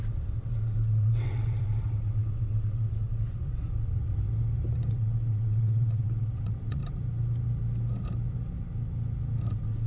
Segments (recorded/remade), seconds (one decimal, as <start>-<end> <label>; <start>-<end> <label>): 0.0-4.1 remade; 4.1-4.9 recorded; 4.9-6.8 remade; 6.8-9.5 recorded; 9.5-9.9 remade